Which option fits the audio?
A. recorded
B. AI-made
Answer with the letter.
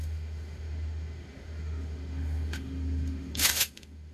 B